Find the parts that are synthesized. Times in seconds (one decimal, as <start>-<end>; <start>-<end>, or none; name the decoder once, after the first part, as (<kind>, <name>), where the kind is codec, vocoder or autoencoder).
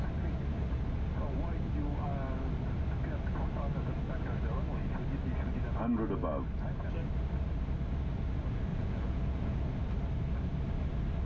8.7-9.6 (vocoder, Vocos)